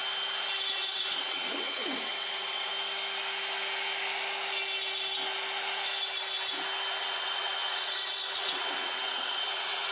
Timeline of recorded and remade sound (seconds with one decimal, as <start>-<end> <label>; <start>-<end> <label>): 0.0-0.7 recorded; 0.7-2.7 remade; 2.7-7.0 recorded; 7.0-9.9 remade